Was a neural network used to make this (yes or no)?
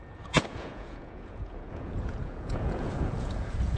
yes